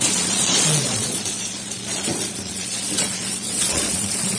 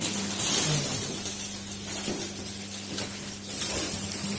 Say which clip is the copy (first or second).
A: first